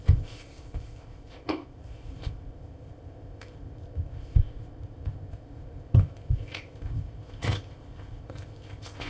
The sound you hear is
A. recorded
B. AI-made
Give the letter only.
B